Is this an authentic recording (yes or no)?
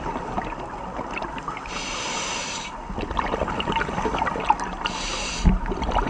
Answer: yes